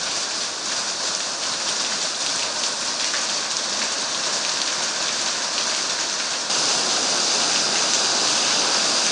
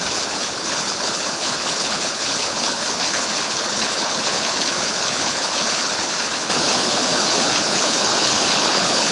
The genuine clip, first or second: first